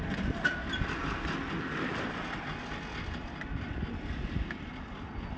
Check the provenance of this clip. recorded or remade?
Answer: recorded